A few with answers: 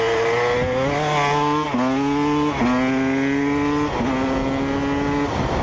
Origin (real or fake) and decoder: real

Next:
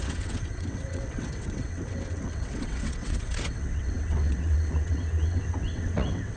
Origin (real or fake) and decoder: fake, vocoder, WaveNeXt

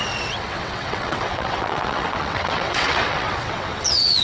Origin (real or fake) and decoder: fake, vocoder, WaveNeXt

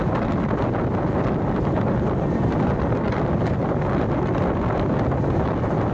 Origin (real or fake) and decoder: real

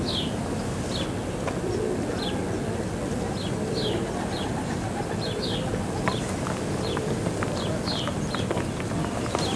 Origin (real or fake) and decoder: real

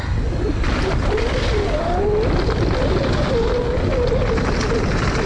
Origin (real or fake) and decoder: real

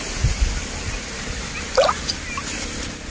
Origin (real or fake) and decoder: real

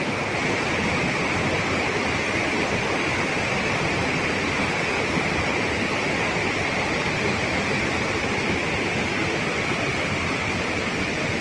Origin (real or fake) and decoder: real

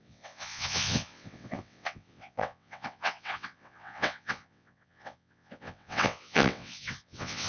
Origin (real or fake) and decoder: fake, vocoder, WaveNeXt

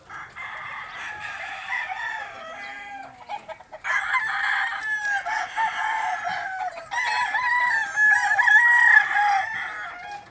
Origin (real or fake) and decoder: real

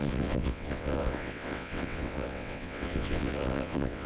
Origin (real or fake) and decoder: fake, vocoder, WaveNeXt